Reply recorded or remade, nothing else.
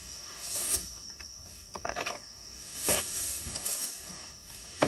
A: remade